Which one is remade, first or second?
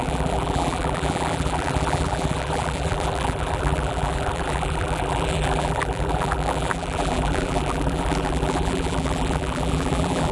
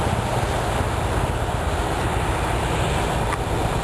first